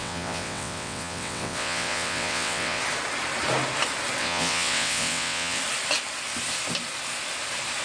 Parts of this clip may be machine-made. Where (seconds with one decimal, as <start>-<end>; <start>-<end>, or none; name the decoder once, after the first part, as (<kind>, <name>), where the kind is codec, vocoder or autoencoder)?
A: 0.0-2.8 (vocoder, WaveNeXt); 4.2-5.6